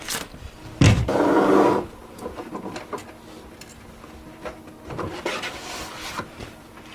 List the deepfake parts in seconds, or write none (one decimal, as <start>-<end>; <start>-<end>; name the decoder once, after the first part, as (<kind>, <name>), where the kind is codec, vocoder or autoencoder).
0.0-1.1 (vocoder, BigVGAN v2); 3.8-6.9